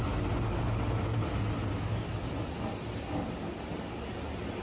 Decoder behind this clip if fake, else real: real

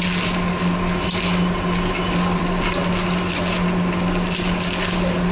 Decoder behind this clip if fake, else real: real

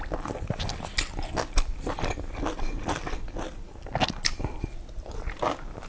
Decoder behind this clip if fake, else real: real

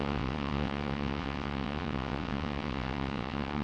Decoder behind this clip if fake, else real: fake, vocoder, WaveNeXt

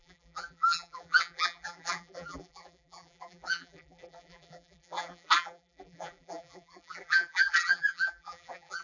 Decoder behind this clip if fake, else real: fake, vocoder, BigVGAN v2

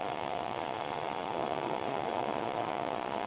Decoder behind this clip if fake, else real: fake, vocoder, Vocos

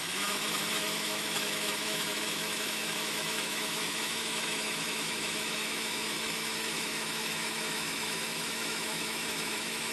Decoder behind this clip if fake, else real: fake, autoencoder, DAC-VAE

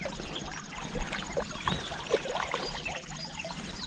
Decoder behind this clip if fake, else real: real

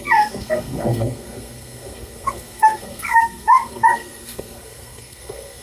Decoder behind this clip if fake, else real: fake, codec, SNAC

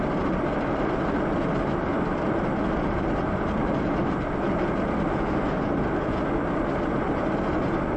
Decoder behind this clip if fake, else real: real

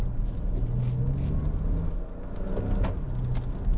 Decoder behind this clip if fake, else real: real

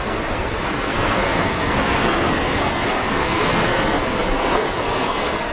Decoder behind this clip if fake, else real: fake, codec, SNAC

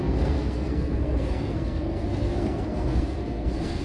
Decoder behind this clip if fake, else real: fake, codec, SNAC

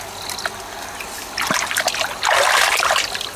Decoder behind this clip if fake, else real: real